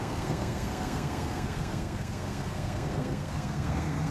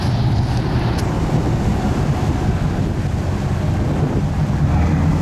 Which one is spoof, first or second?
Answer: first